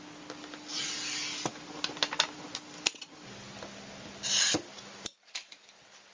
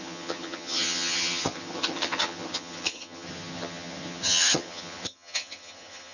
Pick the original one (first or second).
first